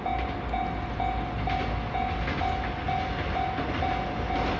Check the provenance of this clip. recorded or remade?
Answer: recorded